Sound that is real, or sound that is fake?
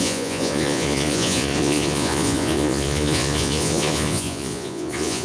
fake